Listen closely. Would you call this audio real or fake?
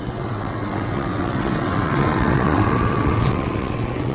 fake